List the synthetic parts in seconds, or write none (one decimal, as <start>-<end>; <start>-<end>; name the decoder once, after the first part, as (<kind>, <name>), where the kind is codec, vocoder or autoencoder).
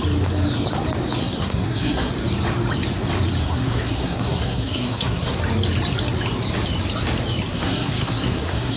1.2-2.1 (codec, SNAC); 3.4-5.4; 7.5-8.8